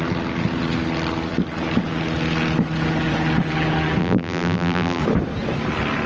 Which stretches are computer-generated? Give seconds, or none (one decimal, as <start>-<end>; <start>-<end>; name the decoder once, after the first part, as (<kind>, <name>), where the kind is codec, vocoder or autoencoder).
4.0-5.0 (vocoder, BigVGAN v2)